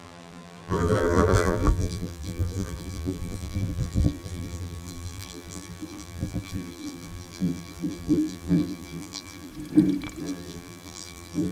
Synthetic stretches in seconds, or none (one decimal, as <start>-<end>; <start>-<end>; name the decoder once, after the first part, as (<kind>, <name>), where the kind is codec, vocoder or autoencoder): 0.0-9.5 (vocoder, BigVGAN v2); 10.2-11.5

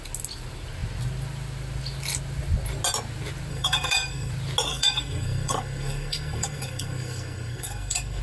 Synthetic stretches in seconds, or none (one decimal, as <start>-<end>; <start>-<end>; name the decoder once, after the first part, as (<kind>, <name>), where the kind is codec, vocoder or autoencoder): 3.5-4.3 (codec, SNAC); 4.7-8.2

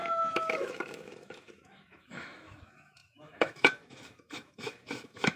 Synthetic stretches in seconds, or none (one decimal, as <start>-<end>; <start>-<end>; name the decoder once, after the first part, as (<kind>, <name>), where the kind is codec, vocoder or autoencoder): 0.0-5.4 (autoencoder, DAC-VAE)

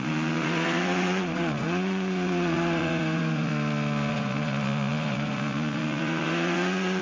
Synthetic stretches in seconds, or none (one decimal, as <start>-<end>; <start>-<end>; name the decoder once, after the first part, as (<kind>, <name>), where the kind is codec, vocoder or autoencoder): 0.0-3.5 (vocoder, Vocos); 4.1-7.0

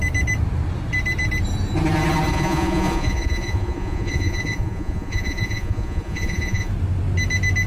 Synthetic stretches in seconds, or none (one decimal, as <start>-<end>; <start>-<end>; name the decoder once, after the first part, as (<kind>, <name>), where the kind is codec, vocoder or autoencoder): 2.3-6.7 (vocoder, Vocos)

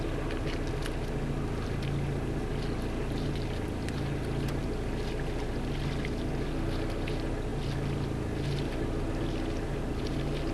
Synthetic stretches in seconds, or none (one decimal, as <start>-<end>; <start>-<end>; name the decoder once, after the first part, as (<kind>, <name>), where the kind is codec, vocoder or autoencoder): none

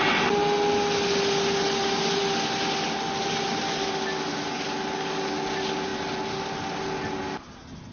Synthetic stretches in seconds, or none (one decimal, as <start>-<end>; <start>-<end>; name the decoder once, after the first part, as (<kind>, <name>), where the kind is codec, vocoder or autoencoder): none